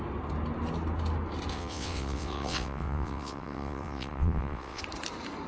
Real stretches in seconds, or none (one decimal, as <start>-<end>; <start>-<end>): 0.0-1.5; 4.8-5.5